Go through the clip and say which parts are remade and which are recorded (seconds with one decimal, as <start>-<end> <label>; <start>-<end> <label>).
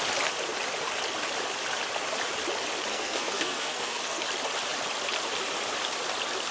0.0-2.9 recorded; 2.9-4.2 remade; 4.2-6.5 recorded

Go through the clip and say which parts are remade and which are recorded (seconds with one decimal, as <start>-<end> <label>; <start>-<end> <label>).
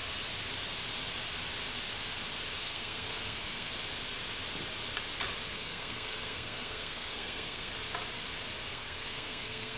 0.0-2.6 recorded; 2.6-3.7 remade; 3.7-5.5 recorded; 5.5-7.7 remade; 7.7-8.7 recorded; 8.7-9.8 remade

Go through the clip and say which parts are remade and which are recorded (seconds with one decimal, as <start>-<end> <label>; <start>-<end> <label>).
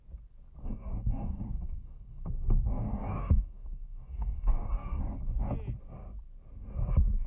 0.0-0.6 recorded; 0.6-5.0 remade; 5.0-7.3 recorded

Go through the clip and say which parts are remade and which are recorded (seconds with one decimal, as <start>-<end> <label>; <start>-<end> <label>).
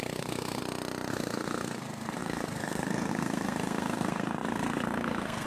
0.0-0.6 remade; 0.6-1.1 recorded; 1.1-5.5 remade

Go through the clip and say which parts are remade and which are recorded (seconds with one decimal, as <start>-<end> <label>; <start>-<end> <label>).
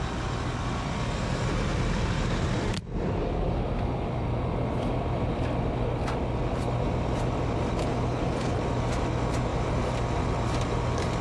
0.0-7.8 recorded; 7.8-8.6 remade; 8.6-11.2 recorded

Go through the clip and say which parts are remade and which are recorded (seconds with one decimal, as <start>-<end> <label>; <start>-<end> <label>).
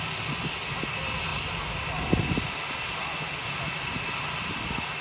0.0-5.0 recorded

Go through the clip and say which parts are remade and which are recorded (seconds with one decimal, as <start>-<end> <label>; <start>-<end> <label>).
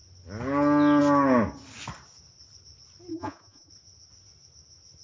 0.0-3.1 recorded; 3.1-3.7 remade; 3.7-5.0 recorded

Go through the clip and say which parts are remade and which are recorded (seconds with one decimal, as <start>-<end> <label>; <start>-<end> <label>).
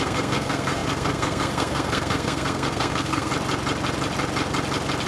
0.0-3.3 remade; 3.3-5.1 recorded